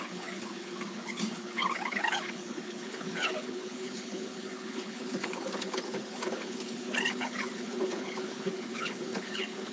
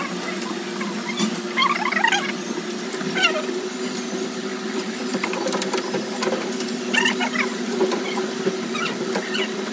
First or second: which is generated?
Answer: first